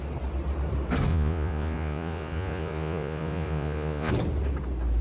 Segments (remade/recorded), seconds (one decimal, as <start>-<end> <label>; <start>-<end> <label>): 0.0-1.1 recorded; 1.1-4.1 remade; 4.1-5.0 recorded